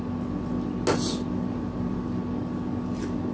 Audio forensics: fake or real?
real